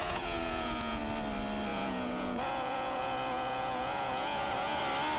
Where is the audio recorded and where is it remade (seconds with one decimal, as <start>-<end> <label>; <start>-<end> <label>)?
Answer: 0.0-1.0 remade; 1.0-1.7 recorded; 1.7-4.8 remade; 4.8-5.2 recorded